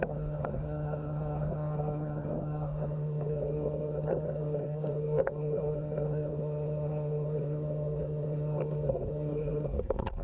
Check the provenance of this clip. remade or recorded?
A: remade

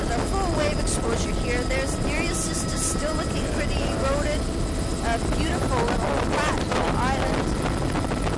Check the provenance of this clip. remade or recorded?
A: recorded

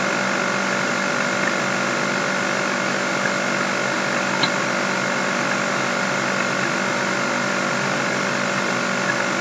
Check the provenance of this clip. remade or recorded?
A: recorded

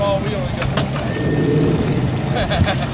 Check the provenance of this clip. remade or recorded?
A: recorded